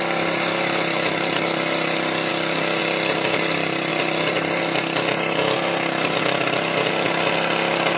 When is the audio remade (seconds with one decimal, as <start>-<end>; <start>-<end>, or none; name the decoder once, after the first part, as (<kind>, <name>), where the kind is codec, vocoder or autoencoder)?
none